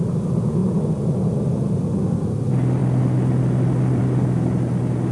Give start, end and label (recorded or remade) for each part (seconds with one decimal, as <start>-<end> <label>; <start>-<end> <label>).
0.0-5.1 recorded